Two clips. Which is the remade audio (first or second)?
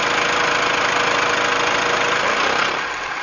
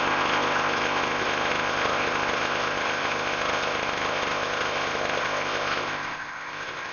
second